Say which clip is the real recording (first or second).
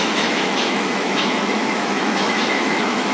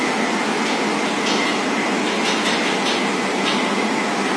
second